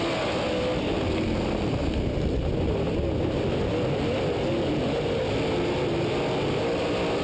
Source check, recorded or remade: recorded